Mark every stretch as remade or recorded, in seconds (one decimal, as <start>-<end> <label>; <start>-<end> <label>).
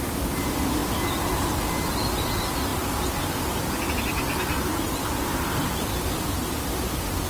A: 0.0-7.3 recorded